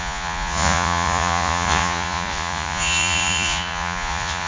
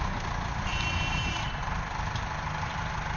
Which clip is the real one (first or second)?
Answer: second